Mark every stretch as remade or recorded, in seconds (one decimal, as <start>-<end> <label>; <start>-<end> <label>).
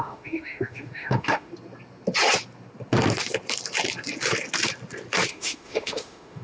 0.0-1.5 remade; 1.5-5.3 recorded; 5.3-6.4 remade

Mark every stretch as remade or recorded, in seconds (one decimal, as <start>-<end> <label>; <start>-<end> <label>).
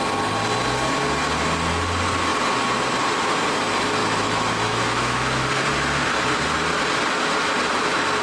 0.0-4.0 recorded; 4.0-5.5 remade; 5.5-8.2 recorded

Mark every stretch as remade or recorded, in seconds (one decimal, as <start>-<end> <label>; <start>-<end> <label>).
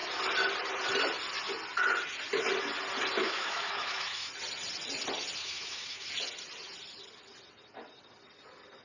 0.0-3.2 recorded; 3.2-4.3 remade; 4.3-5.4 recorded; 5.4-6.1 remade; 6.1-8.8 recorded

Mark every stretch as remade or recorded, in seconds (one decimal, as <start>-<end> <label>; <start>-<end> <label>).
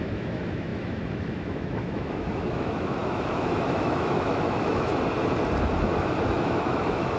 0.0-4.9 remade; 4.9-6.4 recorded; 6.4-7.2 remade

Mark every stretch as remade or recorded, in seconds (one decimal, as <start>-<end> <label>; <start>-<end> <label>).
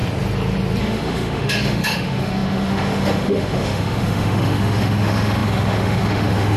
0.0-0.8 recorded; 0.8-6.6 remade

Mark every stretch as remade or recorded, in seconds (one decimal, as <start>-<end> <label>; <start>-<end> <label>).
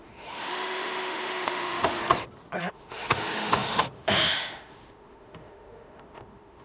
0.0-2.0 remade; 2.0-2.6 recorded; 2.6-6.6 remade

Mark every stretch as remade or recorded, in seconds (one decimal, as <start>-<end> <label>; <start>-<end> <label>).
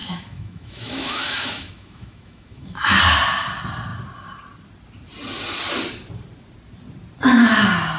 0.0-3.0 remade; 3.0-8.0 recorded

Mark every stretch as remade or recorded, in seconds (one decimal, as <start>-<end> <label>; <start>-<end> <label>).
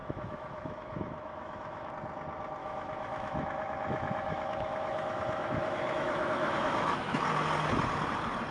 0.0-1.9 remade; 1.9-2.6 recorded; 2.6-7.2 remade; 7.2-8.5 recorded